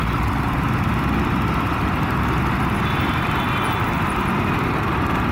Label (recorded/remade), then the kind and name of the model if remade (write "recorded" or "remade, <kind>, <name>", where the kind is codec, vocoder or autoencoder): recorded